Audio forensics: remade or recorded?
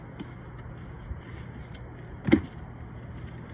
recorded